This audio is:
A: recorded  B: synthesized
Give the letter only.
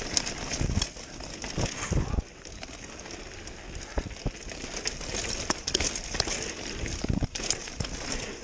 A